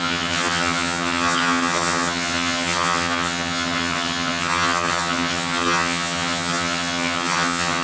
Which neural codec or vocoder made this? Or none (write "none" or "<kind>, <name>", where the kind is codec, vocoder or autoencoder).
vocoder, HiFi-GAN